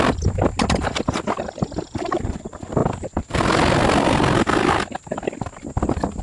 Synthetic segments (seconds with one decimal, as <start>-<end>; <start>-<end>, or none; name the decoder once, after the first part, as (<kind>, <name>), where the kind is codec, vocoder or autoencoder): none